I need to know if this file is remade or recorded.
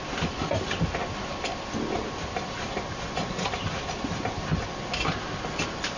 recorded